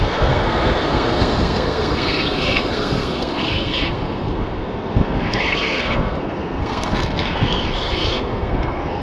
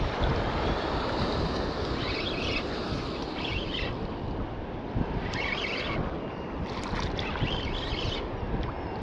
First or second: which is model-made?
first